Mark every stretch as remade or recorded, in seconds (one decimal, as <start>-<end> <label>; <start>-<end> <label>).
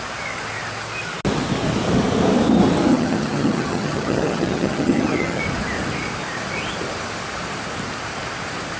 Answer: 0.0-2.9 recorded; 2.9-5.4 remade; 5.4-8.8 recorded